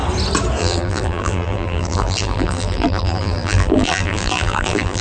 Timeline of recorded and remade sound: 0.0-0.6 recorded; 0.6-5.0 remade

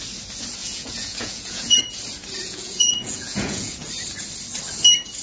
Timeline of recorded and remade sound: 0.0-0.6 recorded; 0.6-1.8 remade; 1.8-2.4 recorded; 2.4-3.9 remade; 3.9-5.2 recorded